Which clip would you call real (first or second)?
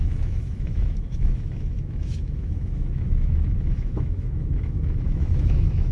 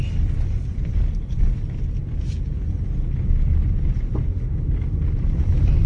second